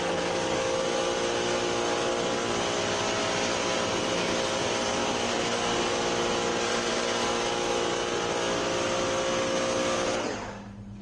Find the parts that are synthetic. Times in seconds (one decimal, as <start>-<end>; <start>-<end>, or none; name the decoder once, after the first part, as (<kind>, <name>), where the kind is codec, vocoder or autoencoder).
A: 5.0-5.5 (autoencoder, DAC-VAE)

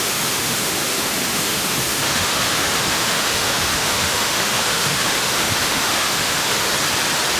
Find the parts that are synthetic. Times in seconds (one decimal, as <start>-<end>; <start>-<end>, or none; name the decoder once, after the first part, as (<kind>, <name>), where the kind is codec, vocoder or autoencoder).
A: 0.0-6.7 (autoencoder, DAC-VAE)